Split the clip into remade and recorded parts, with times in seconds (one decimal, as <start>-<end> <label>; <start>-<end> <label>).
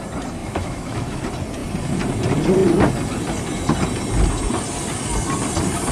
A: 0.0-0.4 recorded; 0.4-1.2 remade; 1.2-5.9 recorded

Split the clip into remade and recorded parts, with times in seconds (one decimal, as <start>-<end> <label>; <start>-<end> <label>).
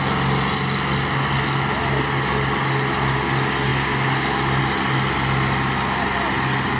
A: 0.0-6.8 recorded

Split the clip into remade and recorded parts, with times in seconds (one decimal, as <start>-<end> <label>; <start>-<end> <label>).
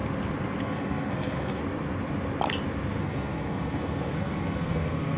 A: 0.0-0.6 recorded; 0.6-1.6 remade; 1.6-3.0 recorded; 3.0-5.2 remade